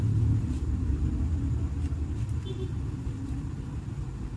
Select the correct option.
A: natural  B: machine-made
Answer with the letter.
A